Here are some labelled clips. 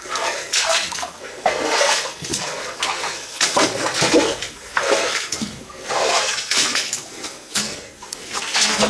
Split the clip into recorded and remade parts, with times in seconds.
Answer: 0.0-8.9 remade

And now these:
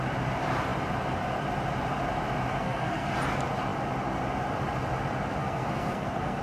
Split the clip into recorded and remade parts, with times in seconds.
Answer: 0.0-2.5 recorded; 2.5-3.1 remade; 3.1-5.4 recorded; 5.4-6.4 remade

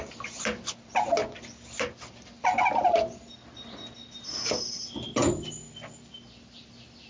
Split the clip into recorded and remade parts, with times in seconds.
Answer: 0.0-7.1 recorded

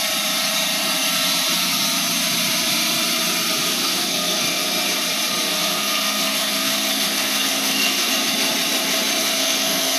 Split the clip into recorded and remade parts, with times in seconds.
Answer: 0.0-3.7 recorded; 3.7-4.6 remade; 4.6-5.5 recorded; 5.5-8.1 remade; 8.1-9.2 recorded; 9.2-10.0 remade